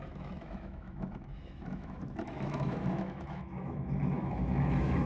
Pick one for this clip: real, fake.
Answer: fake